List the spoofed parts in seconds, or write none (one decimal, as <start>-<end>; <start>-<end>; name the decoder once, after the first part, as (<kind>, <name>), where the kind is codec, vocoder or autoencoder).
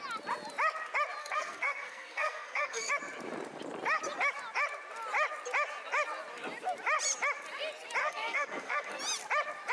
1.2-2.9 (codec, SNAC); 8.0-9.0